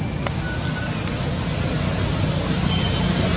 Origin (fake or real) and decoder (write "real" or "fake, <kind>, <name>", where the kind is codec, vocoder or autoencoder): real